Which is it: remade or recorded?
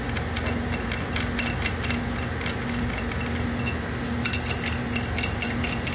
recorded